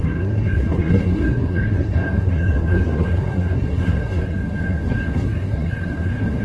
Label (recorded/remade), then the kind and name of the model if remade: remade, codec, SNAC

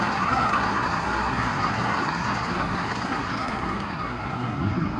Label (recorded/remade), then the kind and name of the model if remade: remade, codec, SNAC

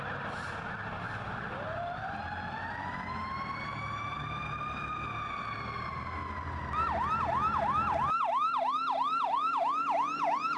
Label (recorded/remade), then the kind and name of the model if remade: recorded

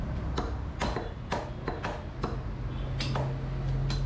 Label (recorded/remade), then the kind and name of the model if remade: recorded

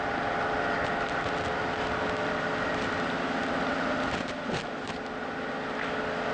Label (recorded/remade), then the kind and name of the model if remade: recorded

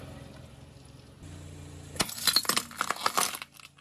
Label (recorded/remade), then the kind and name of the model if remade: recorded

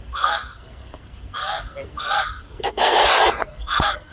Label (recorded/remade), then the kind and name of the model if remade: remade, codec, SNAC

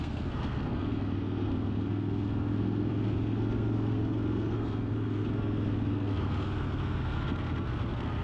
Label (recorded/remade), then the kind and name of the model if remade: remade, codec, SNAC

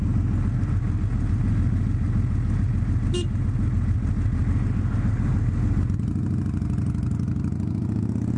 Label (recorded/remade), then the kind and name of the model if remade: recorded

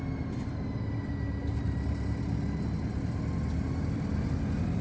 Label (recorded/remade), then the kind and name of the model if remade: recorded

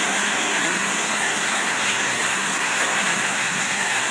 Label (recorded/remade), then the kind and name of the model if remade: remade, codec, SNAC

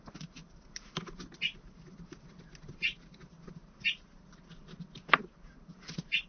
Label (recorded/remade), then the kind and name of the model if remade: recorded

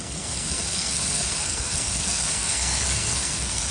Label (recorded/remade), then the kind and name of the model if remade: remade, codec, SNAC